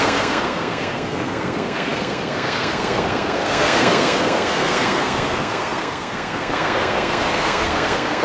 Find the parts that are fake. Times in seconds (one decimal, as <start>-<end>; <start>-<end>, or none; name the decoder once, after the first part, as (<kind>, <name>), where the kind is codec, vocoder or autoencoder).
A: 0.0-8.2 (codec, SNAC)